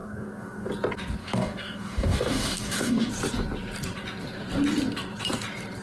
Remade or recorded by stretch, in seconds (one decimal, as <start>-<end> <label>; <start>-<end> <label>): 0.0-0.7 remade; 0.7-1.2 recorded; 1.2-3.1 remade; 3.1-5.8 recorded